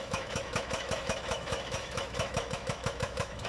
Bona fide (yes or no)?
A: no